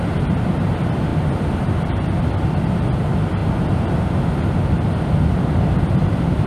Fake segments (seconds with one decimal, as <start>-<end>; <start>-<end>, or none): 0.0-3.4; 4.5-6.5